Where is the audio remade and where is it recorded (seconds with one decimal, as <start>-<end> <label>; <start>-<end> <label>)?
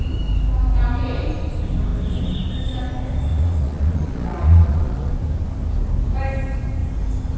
0.0-3.3 recorded; 3.3-5.1 remade; 5.1-7.4 recorded